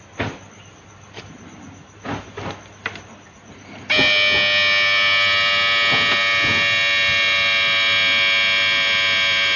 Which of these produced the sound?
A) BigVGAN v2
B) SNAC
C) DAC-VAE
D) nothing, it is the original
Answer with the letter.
D